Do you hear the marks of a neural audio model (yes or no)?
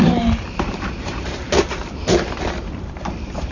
yes